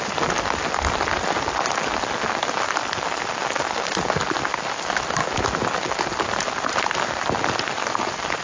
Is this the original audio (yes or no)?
yes